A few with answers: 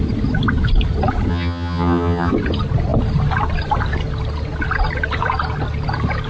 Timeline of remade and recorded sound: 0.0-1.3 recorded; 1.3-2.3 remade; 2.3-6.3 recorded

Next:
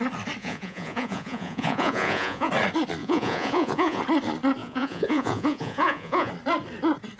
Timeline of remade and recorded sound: 0.0-0.4 recorded; 0.4-2.5 remade; 2.5-3.0 recorded; 3.0-4.0 remade; 4.0-4.6 recorded; 4.6-6.3 remade; 6.3-7.2 recorded

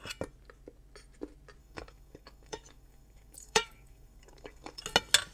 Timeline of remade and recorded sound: 0.0-1.6 recorded; 1.6-4.8 remade; 4.8-5.3 recorded